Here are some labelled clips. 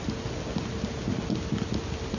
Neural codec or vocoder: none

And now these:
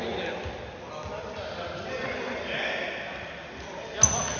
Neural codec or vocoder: none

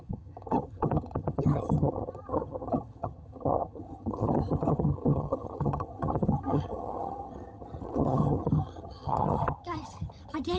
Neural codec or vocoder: vocoder, HiFi-GAN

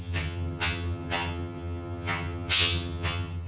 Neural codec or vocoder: vocoder, HiFi-GAN